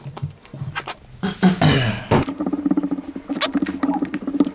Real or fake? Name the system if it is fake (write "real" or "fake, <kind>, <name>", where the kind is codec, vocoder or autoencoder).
real